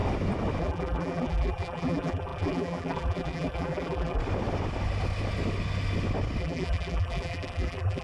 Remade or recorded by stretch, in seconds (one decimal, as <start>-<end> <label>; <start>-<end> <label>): 0.0-0.6 recorded; 0.6-4.2 remade; 4.2-6.4 recorded; 6.4-8.0 remade